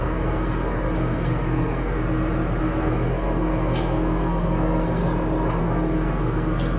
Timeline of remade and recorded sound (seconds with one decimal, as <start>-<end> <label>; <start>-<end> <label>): 0.0-1.9 remade; 1.9-2.6 recorded; 2.6-5.0 remade; 5.0-5.6 recorded; 5.6-6.8 remade